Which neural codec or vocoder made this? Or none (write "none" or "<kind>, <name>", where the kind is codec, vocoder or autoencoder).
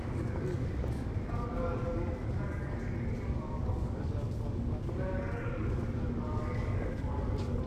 codec, DAC